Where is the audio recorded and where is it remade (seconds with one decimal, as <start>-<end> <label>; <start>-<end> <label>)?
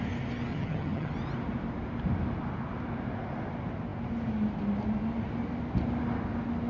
0.0-0.5 recorded; 0.5-1.1 remade; 1.1-6.7 recorded